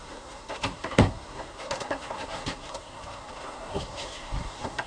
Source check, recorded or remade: remade